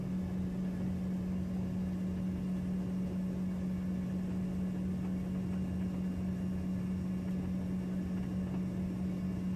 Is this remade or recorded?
recorded